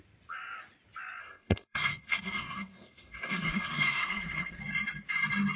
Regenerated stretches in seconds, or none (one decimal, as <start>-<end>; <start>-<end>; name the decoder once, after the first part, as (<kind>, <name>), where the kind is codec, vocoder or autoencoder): 1.2-4.6 (codec, SNAC)